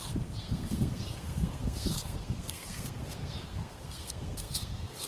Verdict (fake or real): fake